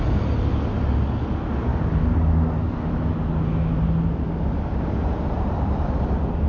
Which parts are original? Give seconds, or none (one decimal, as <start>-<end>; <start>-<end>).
0.0-1.7; 2.9-6.5